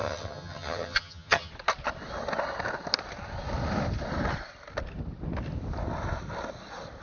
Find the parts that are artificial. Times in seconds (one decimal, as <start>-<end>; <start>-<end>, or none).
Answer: 0.0-1.5